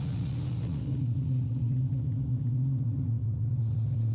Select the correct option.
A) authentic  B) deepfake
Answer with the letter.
B